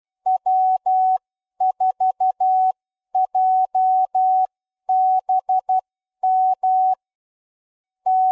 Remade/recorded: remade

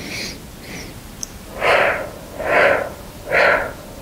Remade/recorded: recorded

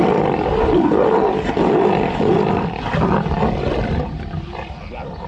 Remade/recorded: recorded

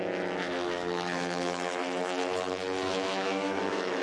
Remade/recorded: remade